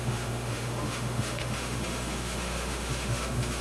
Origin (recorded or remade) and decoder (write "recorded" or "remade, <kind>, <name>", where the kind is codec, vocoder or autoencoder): remade, autoencoder, DAC-VAE